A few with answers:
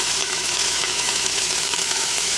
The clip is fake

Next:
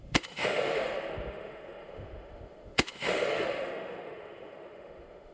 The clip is fake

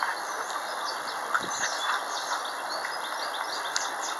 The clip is real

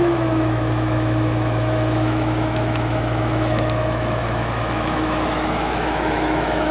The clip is fake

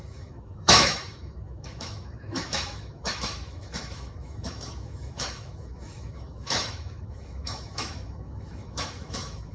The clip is fake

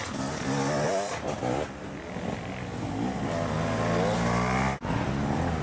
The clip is real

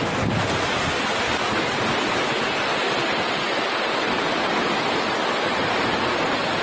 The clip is real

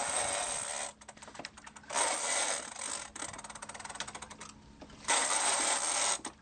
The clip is real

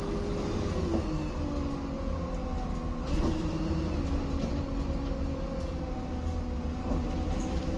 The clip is real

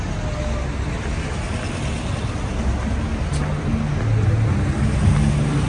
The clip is real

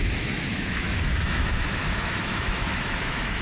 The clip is fake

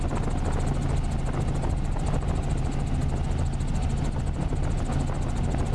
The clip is real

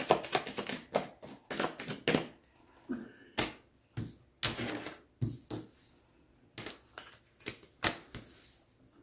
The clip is real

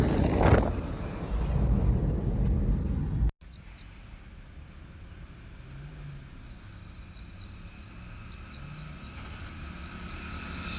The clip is real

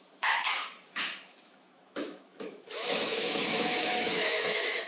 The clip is fake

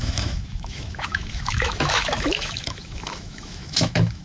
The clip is fake